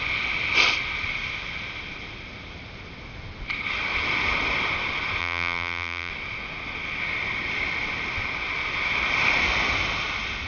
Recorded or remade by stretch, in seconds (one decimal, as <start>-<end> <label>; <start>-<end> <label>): 0.0-5.2 recorded; 5.2-6.1 remade; 6.1-10.5 recorded